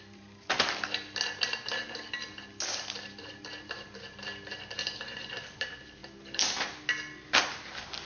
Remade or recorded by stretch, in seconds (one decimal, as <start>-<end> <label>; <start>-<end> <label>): 0.0-8.0 recorded